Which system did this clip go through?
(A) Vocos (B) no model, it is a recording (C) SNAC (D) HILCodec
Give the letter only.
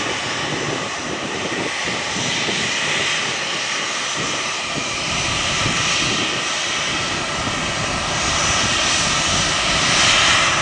B